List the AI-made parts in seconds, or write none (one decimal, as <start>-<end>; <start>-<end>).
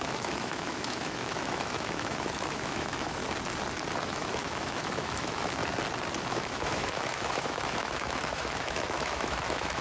0.0-3.2; 4.0-5.6; 6.3-9.8